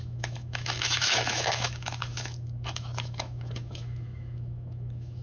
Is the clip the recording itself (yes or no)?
no